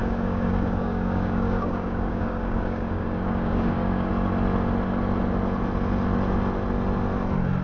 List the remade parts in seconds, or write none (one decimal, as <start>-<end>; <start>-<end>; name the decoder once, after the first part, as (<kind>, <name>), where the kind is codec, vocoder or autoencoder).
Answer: 0.0-4.1 (codec, DAC)